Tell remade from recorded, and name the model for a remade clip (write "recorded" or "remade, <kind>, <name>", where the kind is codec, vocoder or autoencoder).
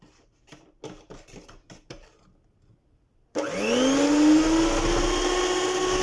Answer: recorded